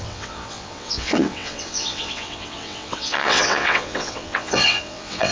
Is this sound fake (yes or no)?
yes